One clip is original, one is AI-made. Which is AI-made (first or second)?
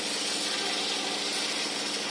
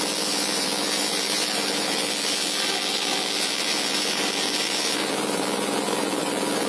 second